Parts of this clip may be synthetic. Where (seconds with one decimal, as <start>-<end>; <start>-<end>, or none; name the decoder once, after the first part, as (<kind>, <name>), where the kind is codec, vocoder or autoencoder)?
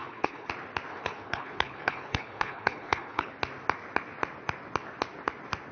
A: 0.0-0.5 (codec, HILCodec); 0.9-3.3